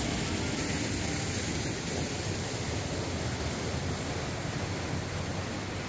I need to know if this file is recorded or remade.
recorded